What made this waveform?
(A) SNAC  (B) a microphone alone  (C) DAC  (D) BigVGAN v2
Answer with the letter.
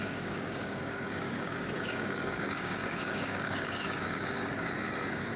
C